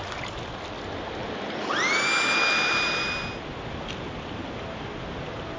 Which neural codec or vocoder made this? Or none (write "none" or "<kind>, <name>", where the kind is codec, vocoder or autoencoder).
none